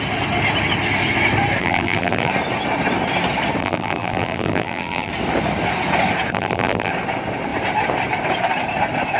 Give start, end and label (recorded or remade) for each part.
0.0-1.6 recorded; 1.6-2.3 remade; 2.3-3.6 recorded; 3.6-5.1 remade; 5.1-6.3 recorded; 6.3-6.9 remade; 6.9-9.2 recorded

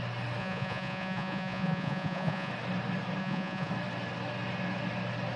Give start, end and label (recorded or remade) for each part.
0.0-0.4 recorded; 0.4-2.5 remade; 2.5-3.2 recorded; 3.2-3.7 remade; 3.7-5.4 recorded

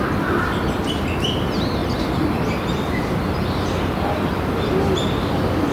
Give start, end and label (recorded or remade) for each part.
0.0-5.7 recorded

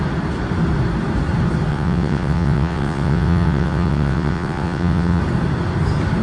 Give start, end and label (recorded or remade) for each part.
0.0-1.7 recorded; 1.7-5.2 remade; 5.2-6.2 recorded